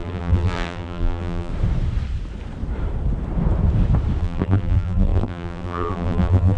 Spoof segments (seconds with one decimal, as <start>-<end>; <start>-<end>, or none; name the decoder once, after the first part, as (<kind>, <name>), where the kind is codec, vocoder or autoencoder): 0.0-1.5 (vocoder, BigVGAN v2); 4.2-6.6